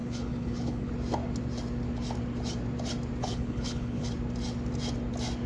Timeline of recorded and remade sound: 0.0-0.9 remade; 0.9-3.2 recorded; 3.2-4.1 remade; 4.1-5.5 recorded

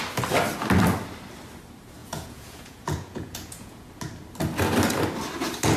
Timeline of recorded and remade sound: 0.0-2.0 recorded; 2.0-3.9 remade; 3.9-5.8 recorded

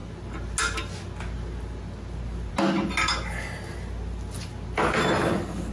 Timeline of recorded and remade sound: 0.0-5.7 recorded

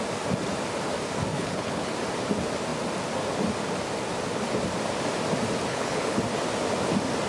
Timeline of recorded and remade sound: 0.0-1.3 recorded; 1.3-1.9 remade; 1.9-5.7 recorded; 5.7-6.2 remade; 6.2-7.3 recorded

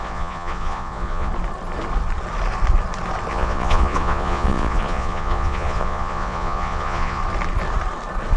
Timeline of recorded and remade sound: 0.0-1.3 remade; 1.3-3.3 recorded; 3.3-7.2 remade; 7.2-8.4 recorded

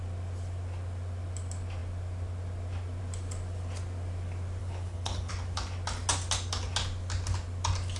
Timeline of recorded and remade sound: 0.0-4.6 recorded; 4.6-5.3 remade; 5.3-8.0 recorded

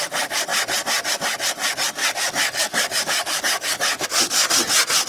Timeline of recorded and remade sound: 0.0-2.0 recorded; 2.0-4.5 remade; 4.5-5.1 recorded